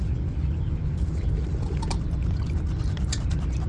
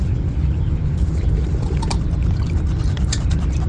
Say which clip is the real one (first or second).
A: first